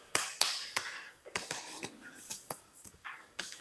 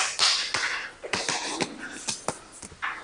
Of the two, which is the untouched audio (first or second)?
second